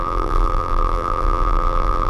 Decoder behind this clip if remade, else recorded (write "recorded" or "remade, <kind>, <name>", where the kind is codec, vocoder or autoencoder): remade, vocoder, BigVGAN v2